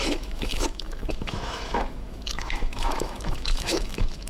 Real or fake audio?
fake